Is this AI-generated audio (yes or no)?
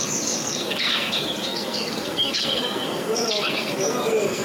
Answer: yes